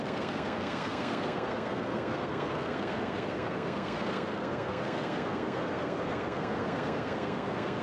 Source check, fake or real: fake